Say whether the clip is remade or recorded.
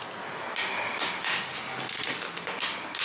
recorded